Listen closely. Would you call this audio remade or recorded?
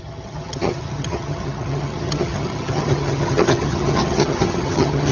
remade